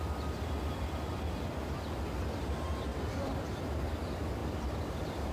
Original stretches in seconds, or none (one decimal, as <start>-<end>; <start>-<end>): 0.0-2.9; 3.4-4.4

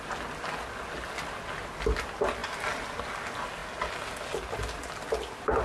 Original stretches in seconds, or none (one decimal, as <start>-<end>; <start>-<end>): 0.0-5.6

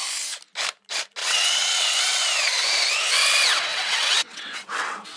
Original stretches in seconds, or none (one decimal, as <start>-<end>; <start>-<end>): 0.0-1.2; 2.0-3.7

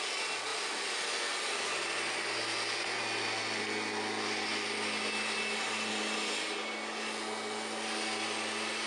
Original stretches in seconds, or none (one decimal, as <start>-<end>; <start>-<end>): 0.0-8.9

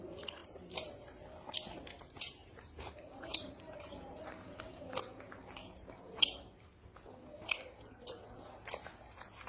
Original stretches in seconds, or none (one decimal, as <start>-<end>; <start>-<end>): 0.0-2.4; 4.6-9.5

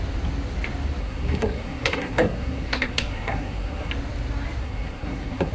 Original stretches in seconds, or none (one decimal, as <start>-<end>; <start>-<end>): 0.0-1.0; 3.9-4.6